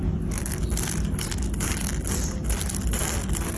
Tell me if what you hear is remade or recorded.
recorded